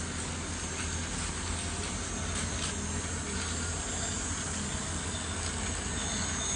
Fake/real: real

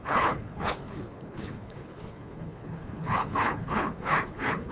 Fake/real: fake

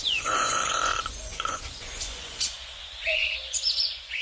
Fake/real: fake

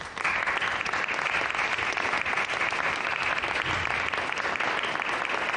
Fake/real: real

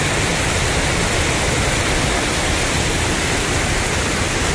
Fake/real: real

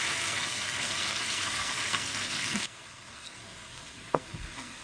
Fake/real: fake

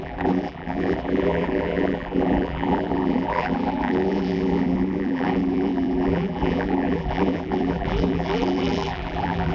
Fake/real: fake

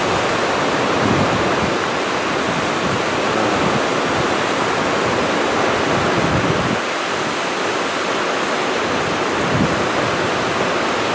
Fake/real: real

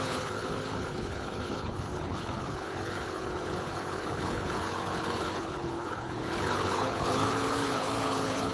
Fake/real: fake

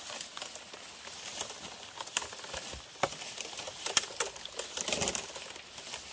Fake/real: real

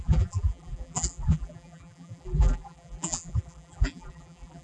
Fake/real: fake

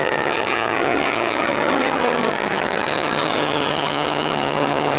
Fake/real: fake